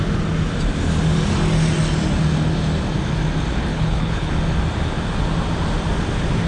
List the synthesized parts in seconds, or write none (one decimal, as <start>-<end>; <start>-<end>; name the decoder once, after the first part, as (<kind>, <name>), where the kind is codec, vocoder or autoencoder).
3.7-4.3 (codec, HILCodec)